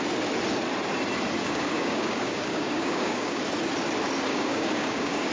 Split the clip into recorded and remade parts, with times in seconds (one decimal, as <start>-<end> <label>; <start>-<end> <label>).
0.0-1.4 recorded; 1.4-3.4 remade; 3.4-4.3 recorded; 4.3-5.3 remade